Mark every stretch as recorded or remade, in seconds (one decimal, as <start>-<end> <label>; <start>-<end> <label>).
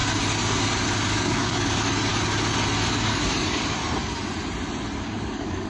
0.0-1.1 recorded; 1.1-2.1 remade; 2.1-2.9 recorded; 2.9-3.8 remade; 3.8-5.0 recorded; 5.0-5.7 remade